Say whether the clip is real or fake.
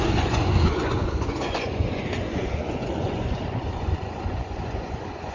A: fake